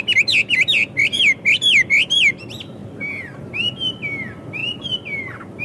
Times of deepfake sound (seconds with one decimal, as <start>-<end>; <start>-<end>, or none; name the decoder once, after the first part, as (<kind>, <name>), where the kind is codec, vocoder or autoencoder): none